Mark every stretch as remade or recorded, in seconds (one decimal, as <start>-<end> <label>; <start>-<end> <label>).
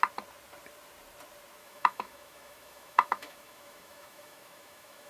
0.0-1.6 recorded; 1.6-5.1 remade